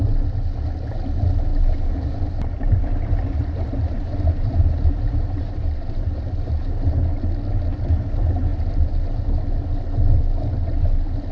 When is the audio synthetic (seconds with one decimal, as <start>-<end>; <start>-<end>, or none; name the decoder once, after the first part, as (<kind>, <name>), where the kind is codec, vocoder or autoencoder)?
1.5-6.5 (vocoder, BigVGAN v2)

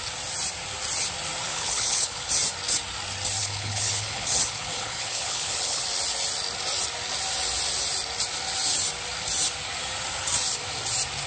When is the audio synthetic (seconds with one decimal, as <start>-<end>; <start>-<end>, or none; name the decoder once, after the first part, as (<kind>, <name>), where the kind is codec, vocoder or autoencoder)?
1.5-2.3 (codec, HILCodec); 3.4-5.8

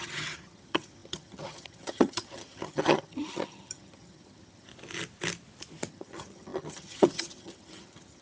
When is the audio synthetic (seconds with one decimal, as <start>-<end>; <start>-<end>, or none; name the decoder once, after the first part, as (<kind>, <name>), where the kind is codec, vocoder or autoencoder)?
0.0-4.7 (vocoder, HiFi-GAN); 5.9-8.2